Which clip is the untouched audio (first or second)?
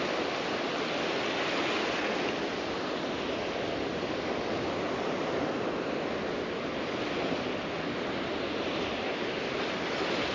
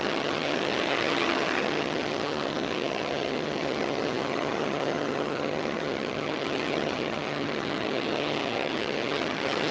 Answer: first